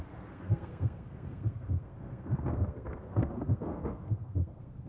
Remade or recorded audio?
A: remade